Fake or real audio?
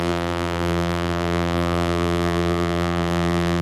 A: fake